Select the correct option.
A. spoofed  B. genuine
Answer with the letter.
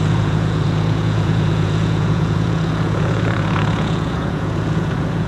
A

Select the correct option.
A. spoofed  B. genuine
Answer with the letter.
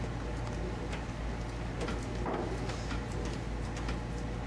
B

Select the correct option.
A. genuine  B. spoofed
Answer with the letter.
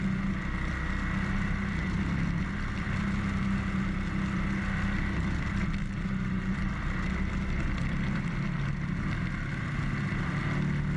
A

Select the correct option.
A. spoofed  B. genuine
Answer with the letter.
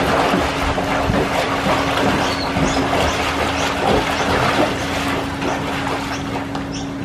B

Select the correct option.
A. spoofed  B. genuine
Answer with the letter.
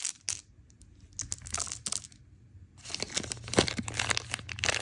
B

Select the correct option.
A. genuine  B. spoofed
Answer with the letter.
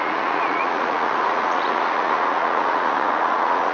B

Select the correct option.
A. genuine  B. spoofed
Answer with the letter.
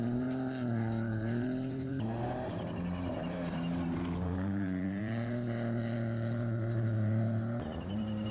B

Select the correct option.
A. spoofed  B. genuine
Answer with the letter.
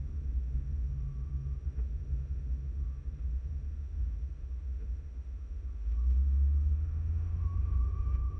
A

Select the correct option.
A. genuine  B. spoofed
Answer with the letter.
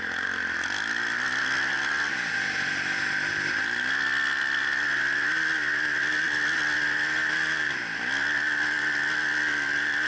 A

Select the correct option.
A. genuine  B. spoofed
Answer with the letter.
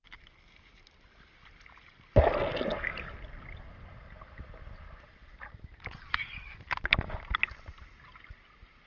A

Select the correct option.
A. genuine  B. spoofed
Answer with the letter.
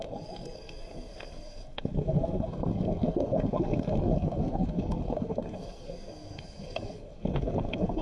B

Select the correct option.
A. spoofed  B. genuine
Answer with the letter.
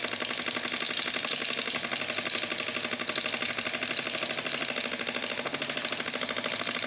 B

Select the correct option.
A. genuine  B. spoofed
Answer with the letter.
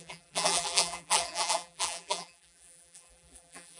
B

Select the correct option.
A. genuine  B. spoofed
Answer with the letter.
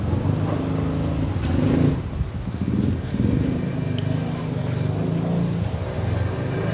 A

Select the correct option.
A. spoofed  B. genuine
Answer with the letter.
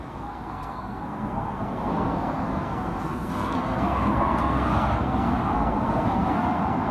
A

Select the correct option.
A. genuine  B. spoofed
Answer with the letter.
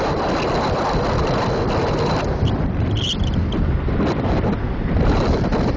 A